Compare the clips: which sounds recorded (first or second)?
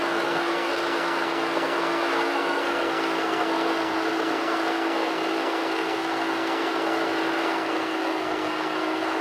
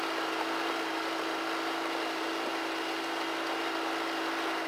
second